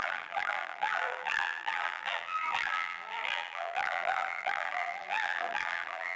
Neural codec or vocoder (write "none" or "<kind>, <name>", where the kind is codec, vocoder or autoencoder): vocoder, BigVGAN v2